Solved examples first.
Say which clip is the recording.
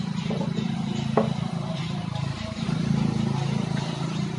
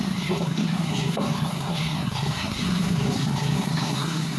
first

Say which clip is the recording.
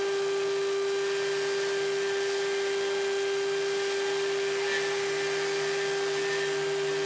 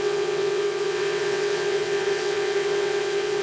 first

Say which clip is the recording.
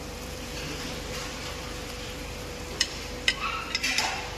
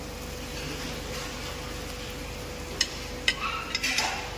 second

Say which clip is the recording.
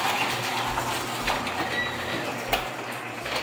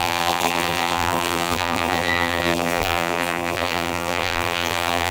first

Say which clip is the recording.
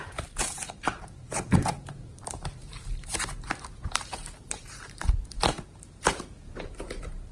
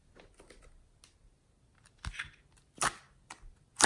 second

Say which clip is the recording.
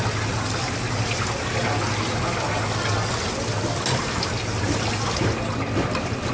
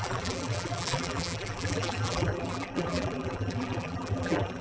first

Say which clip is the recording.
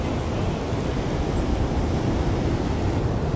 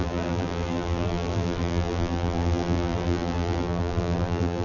first